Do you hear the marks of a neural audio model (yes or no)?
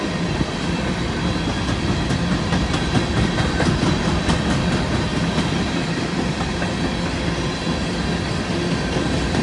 no